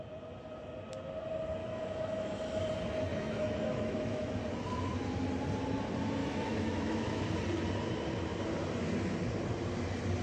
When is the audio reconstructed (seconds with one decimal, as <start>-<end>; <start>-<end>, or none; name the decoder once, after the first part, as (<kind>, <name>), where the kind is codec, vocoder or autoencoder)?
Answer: 1.6-2.6 (autoencoder, DAC-VAE); 3.1-4.4; 6.2-7.3